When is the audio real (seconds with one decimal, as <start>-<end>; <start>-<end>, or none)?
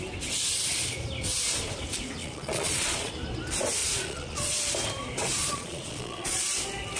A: 0.0-2.2; 3.1-3.8; 4.6-5.4; 6.4-7.0